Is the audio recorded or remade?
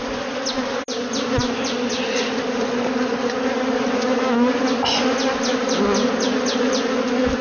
recorded